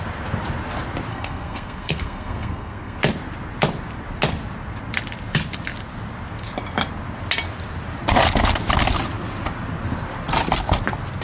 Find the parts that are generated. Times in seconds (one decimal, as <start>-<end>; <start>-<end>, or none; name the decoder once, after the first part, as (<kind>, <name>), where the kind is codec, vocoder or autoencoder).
1.1-3.0 (codec, SNAC)